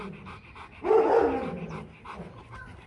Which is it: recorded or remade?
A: recorded